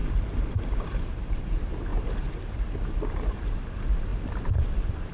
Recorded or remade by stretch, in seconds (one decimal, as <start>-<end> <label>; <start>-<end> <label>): 0.0-0.7 recorded; 0.7-4.1 remade; 4.1-4.6 recorded; 4.6-5.1 remade